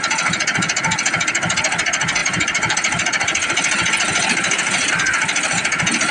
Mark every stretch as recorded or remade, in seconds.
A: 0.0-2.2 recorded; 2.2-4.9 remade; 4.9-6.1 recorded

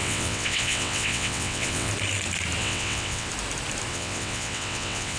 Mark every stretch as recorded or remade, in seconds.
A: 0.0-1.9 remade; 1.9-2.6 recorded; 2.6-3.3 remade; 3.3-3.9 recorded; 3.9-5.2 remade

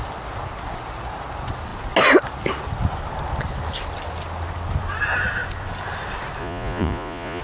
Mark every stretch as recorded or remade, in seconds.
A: 0.0-6.4 recorded; 6.4-7.4 remade

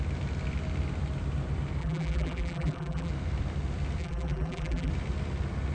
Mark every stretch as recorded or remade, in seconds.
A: 0.0-1.8 recorded; 1.8-3.1 remade; 3.1-4.0 recorded; 4.0-4.9 remade; 4.9-5.7 recorded

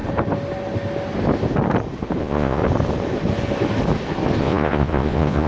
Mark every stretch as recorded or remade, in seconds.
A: 0.0-2.2 recorded; 2.2-2.6 remade; 2.6-4.4 recorded; 4.4-5.5 remade